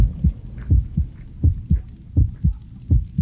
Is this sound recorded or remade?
recorded